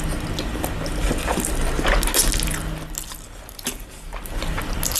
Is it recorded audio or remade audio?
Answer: recorded